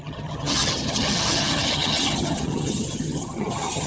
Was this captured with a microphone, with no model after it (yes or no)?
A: no